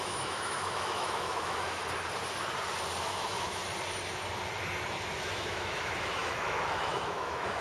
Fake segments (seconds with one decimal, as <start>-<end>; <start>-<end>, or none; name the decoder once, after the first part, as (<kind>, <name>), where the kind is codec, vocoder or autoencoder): 0.0-1.8 (autoencoder, DAC-VAE); 3.0-3.6; 5.2-7.6